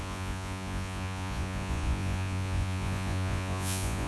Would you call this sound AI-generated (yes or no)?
yes